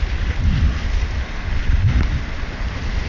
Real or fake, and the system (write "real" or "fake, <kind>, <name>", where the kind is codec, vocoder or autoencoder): real